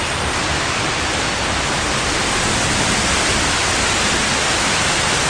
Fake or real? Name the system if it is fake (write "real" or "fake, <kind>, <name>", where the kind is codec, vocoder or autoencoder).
real